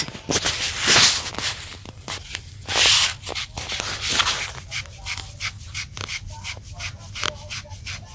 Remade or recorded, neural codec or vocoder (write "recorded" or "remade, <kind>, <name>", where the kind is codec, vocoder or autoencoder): recorded